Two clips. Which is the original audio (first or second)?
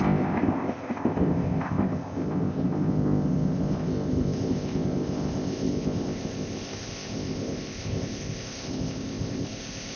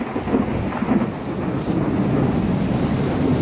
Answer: second